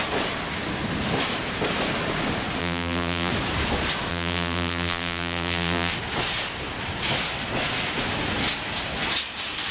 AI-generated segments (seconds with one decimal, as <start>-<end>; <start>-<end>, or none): 2.6-3.3; 4.1-5.9

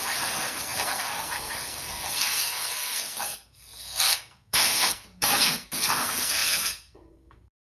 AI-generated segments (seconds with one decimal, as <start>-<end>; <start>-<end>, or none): 0.0-7.6

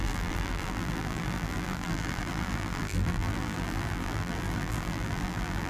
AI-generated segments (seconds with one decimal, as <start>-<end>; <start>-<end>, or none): 0.0-5.7

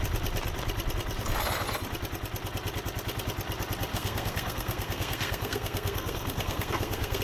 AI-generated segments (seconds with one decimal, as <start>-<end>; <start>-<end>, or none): 3.9-7.2

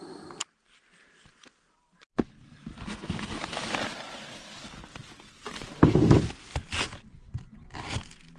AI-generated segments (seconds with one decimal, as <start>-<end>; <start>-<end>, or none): none